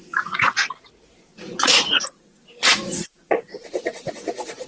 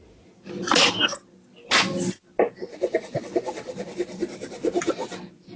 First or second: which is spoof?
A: first